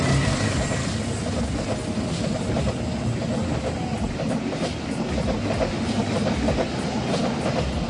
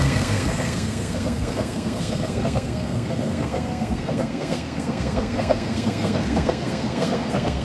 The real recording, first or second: first